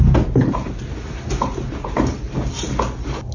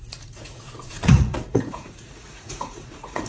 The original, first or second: first